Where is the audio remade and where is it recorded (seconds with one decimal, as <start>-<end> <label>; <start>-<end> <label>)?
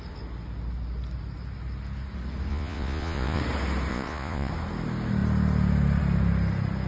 0.0-2.5 recorded; 2.5-3.4 remade; 3.4-3.9 recorded; 3.9-4.5 remade; 4.5-6.9 recorded